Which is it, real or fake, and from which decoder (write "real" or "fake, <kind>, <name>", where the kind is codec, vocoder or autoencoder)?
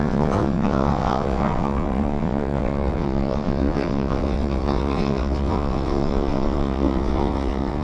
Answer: fake, vocoder, WaveNeXt